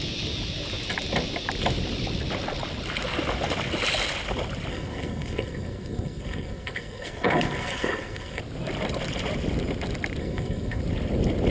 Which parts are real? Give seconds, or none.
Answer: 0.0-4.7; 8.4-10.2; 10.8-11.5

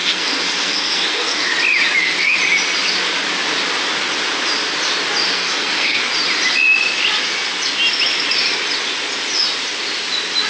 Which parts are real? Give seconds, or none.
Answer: 1.5-2.0; 2.4-5.3; 6.0-10.5

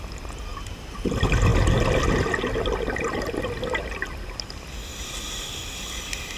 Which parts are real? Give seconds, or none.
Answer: 0.0-6.4

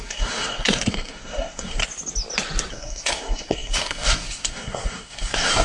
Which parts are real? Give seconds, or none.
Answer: 1.8-2.7

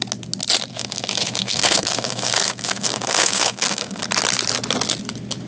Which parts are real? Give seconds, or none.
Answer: 0.0-0.7; 4.0-5.5

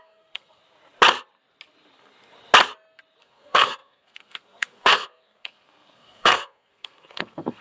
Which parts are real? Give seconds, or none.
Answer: 0.6-3.2